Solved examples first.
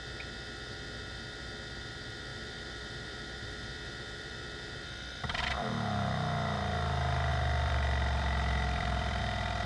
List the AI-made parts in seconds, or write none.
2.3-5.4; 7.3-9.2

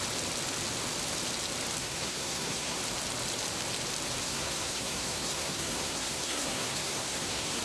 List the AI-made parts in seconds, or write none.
1.8-2.8; 4.2-7.6

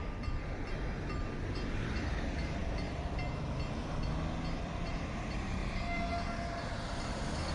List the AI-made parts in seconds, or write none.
0.0-2.6; 4.6-5.6

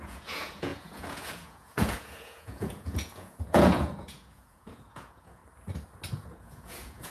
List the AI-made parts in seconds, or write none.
0.0-5.4; 6.1-7.1

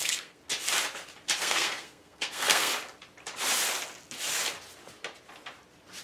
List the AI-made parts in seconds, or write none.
0.0-0.4; 1.4-2.7

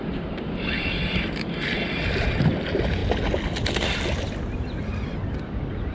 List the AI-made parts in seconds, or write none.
none